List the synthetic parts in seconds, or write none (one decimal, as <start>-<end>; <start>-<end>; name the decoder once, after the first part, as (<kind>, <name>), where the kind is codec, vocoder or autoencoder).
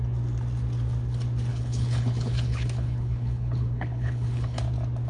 1.5-4.6 (codec, HILCodec)